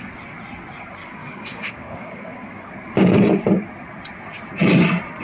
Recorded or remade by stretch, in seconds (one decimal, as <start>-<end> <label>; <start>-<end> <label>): 0.0-1.2 recorded; 1.2-2.3 remade; 2.3-5.2 recorded